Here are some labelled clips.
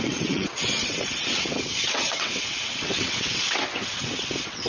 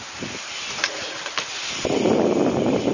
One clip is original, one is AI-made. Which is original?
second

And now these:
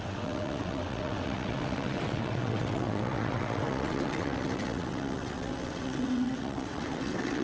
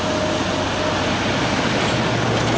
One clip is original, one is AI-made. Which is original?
second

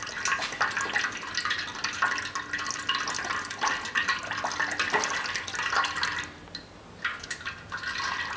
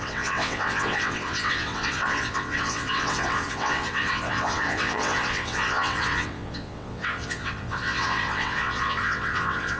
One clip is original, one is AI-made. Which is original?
first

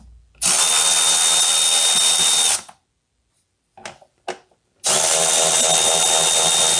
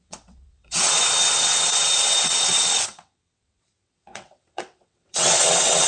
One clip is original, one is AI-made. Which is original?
first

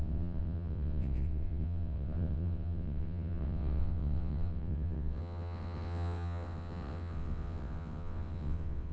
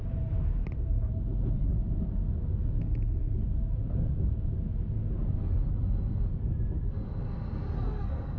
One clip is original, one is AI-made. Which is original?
second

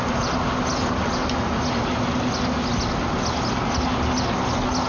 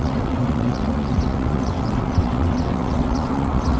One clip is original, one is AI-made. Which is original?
first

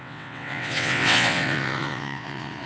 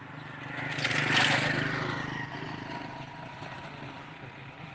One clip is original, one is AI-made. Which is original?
second